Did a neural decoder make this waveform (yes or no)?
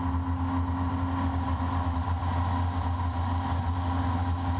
no